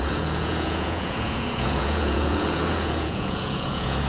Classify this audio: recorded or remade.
remade